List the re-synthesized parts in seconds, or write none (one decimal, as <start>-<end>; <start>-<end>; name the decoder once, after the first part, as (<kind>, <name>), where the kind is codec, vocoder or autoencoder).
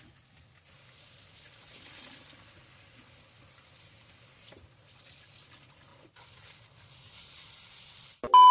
none